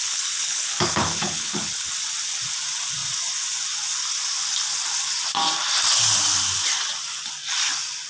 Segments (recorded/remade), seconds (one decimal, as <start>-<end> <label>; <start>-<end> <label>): 0.0-1.9 remade; 1.9-8.1 recorded